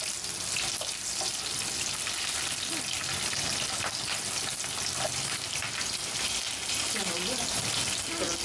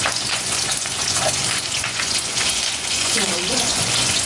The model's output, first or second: second